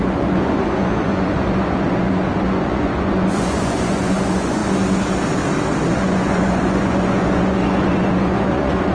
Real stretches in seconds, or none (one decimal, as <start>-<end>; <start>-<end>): 4.6-5.9

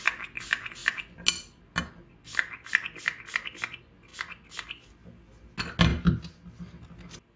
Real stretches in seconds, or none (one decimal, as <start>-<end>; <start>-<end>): 0.0-7.4